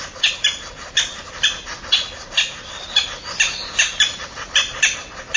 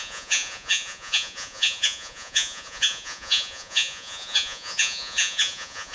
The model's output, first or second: second